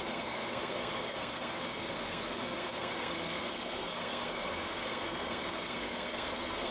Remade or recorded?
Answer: remade